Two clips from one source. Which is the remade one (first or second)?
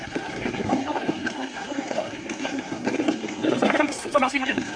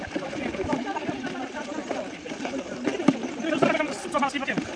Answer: first